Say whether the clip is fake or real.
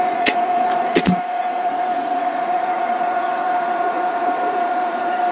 fake